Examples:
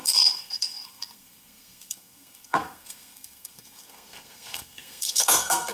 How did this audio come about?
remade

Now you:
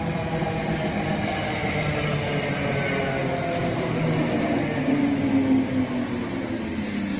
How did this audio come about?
recorded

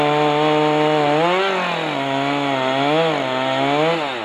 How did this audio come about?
recorded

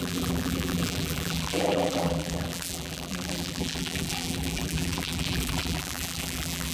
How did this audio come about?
remade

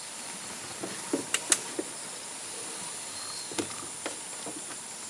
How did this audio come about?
recorded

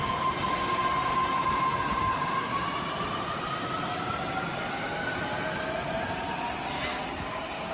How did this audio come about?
recorded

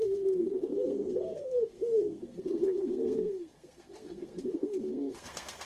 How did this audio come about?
remade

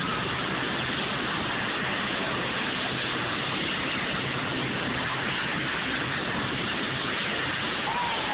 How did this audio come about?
recorded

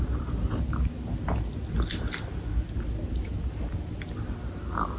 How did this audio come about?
recorded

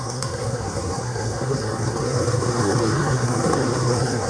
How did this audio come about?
remade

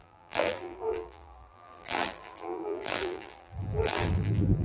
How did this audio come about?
remade